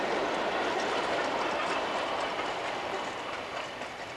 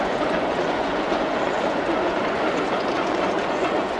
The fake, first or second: second